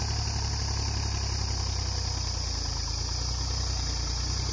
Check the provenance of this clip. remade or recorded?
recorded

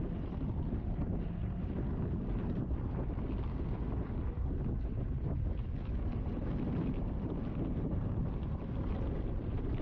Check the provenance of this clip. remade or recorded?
recorded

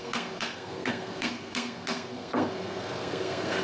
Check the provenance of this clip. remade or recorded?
remade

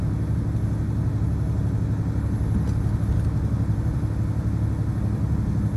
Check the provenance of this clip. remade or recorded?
recorded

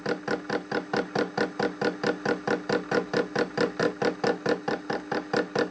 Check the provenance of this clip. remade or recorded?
recorded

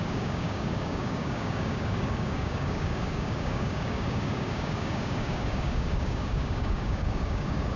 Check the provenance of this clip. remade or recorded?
remade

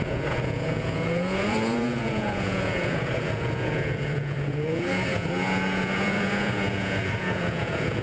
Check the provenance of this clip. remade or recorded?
remade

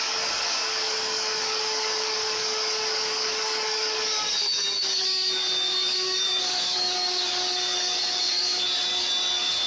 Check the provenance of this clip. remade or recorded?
remade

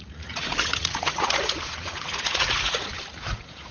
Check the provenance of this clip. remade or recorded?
remade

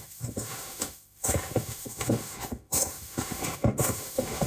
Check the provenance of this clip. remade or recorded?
remade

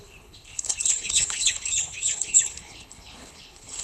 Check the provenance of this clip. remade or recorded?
remade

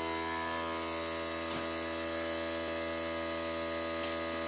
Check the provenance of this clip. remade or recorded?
recorded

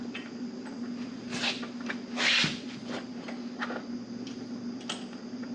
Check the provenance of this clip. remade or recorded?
recorded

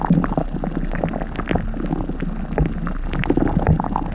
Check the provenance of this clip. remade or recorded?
recorded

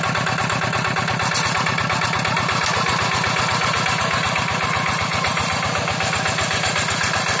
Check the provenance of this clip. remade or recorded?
recorded